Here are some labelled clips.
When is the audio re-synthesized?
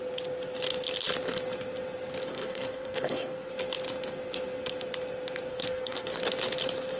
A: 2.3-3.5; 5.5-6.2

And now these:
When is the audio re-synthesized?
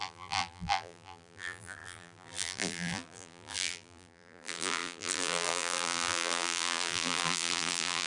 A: 0.0-8.1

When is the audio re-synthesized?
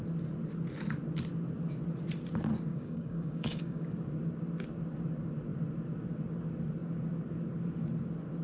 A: 2.7-3.9